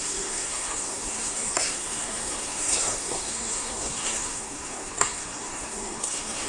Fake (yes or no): yes